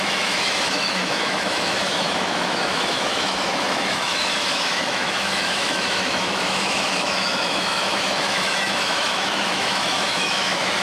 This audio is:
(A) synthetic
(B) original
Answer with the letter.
A